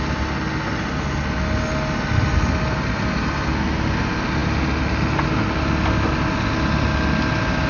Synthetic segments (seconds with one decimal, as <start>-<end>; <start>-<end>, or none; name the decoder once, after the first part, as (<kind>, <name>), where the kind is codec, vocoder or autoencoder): none